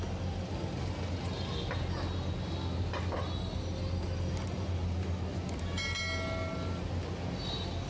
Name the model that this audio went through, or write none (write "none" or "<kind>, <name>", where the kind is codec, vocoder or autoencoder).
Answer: none